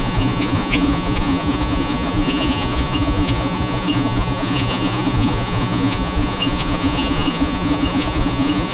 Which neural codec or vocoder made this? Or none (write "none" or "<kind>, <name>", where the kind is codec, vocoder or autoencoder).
vocoder, Vocos